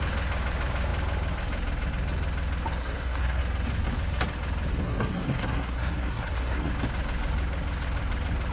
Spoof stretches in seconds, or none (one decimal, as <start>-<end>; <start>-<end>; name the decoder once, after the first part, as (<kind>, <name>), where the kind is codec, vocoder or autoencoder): 2.8-3.4 (codec, SNAC); 4.7-6.7